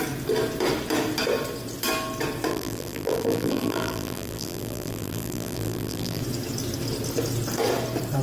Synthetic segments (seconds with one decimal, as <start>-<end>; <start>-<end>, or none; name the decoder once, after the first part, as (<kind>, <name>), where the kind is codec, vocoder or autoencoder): 2.5-6.2 (vocoder, BigVGAN v2)